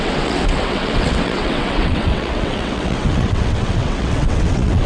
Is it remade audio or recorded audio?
remade